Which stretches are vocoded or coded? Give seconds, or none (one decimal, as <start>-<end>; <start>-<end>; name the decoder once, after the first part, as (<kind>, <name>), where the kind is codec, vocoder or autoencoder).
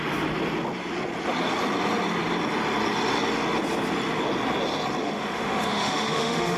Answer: 5.0-6.6 (autoencoder, DAC-VAE)